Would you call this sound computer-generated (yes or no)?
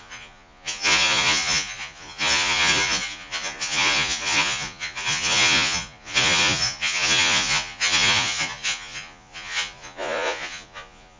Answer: yes